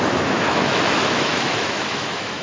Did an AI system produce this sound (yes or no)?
yes